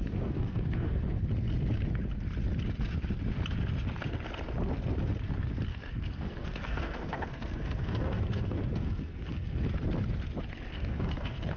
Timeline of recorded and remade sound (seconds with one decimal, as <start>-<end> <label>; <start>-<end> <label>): 0.0-1.2 remade; 1.2-5.7 recorded; 5.7-9.7 remade; 9.7-10.7 recorded; 10.7-11.6 remade